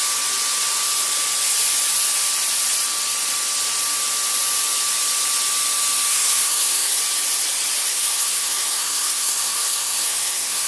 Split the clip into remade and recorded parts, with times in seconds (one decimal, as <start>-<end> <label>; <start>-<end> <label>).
0.0-6.1 recorded; 6.1-7.0 remade; 7.0-7.9 recorded; 7.9-10.7 remade